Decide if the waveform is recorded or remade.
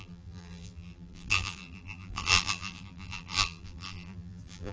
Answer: remade